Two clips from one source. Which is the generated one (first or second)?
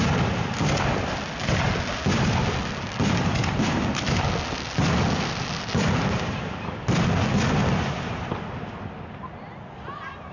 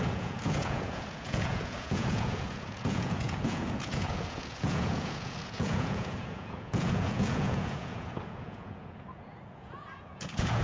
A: second